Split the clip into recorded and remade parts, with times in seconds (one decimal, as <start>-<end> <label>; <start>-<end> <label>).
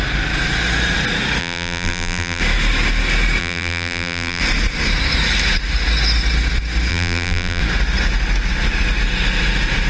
0.0-1.4 recorded; 1.4-2.4 remade; 2.4-3.4 recorded; 3.4-4.4 remade; 4.4-6.9 recorded; 6.9-7.6 remade; 7.6-9.9 recorded